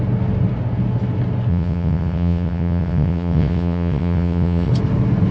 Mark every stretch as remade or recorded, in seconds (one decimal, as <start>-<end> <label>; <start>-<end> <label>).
0.0-1.5 recorded; 1.5-4.7 remade; 4.7-5.3 recorded